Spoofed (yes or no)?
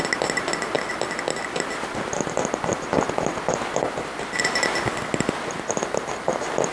no